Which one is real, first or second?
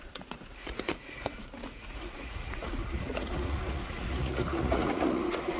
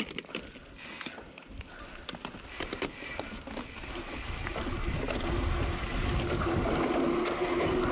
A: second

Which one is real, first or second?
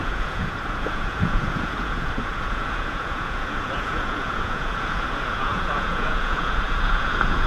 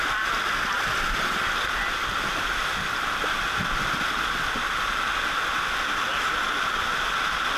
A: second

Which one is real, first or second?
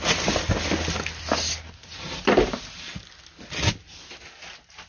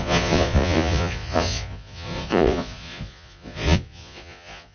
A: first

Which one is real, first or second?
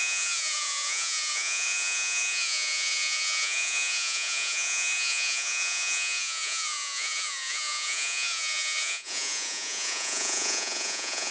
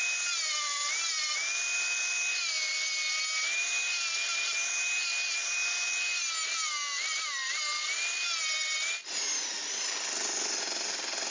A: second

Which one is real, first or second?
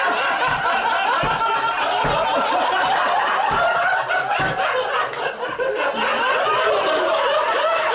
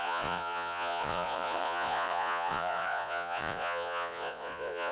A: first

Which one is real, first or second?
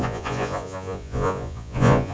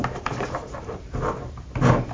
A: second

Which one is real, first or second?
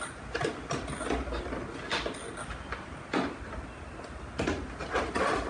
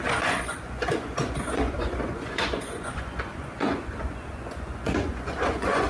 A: first